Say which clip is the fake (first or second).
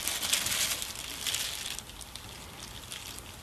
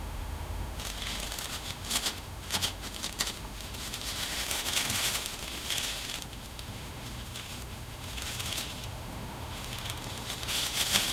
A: second